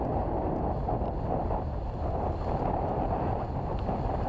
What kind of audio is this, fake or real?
real